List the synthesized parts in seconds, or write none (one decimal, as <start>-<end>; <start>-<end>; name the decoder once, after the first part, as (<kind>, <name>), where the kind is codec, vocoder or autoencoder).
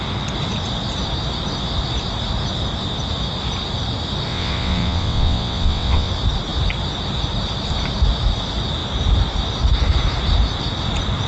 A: 4.3-6.1 (vocoder, WaveNeXt)